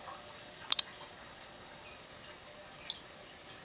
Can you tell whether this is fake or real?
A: real